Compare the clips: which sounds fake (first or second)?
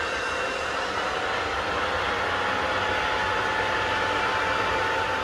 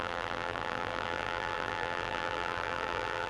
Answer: second